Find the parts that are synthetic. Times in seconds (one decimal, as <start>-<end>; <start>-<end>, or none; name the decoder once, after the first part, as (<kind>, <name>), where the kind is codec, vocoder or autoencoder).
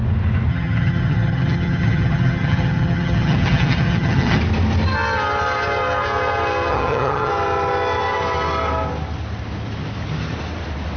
0.5-4.4 (vocoder, HiFi-GAN); 6.7-7.3